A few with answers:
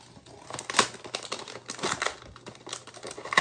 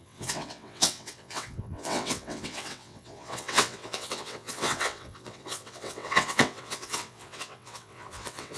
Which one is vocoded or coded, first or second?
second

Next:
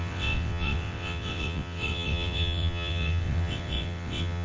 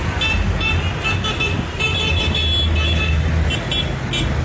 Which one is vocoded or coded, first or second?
first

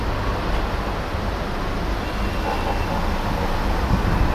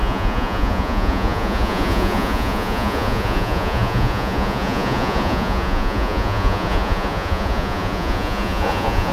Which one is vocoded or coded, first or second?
second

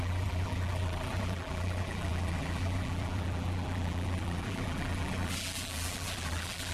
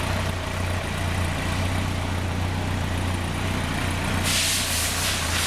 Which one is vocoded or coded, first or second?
first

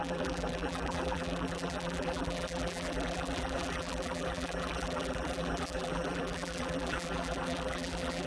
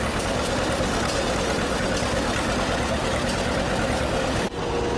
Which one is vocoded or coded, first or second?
first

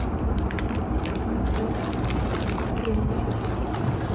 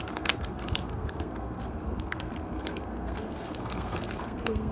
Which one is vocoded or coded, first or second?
second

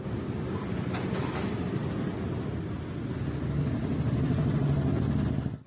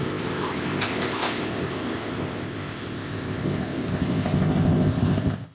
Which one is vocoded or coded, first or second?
second